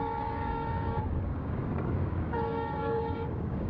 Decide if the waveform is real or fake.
fake